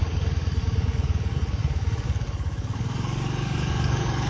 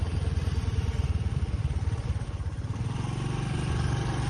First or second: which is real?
second